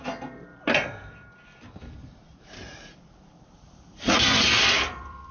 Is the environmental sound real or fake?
fake